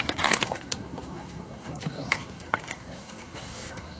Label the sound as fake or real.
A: fake